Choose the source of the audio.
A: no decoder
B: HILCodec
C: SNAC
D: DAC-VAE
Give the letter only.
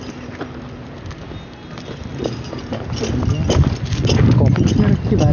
A